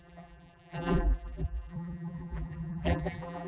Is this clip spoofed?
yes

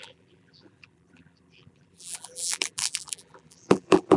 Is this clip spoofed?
yes